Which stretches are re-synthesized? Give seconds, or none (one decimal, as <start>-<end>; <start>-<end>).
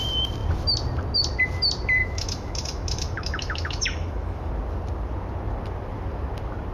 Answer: 2.0-4.5